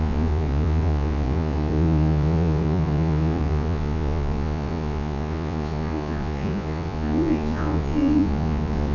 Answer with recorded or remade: remade